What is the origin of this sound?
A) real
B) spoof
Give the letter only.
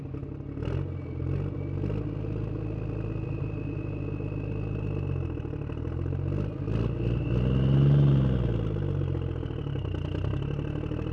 A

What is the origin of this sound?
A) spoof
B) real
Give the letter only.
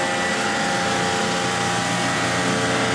B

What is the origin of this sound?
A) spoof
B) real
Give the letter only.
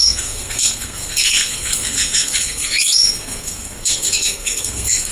A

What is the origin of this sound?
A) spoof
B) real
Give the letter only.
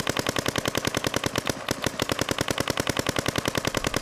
B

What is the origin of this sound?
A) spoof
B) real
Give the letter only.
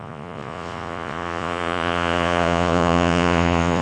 A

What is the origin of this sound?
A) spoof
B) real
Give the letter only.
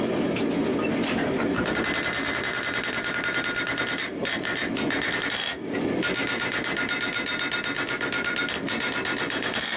B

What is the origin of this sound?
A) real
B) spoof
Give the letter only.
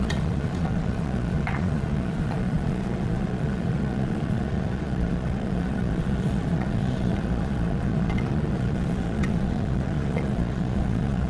B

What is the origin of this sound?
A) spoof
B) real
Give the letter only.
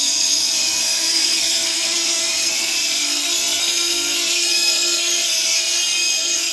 A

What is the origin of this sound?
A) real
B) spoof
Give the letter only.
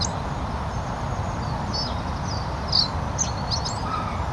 A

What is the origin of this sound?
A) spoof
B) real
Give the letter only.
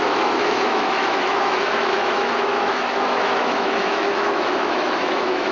A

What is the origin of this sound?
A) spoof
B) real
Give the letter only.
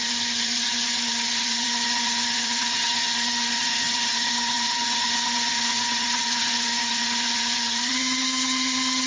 A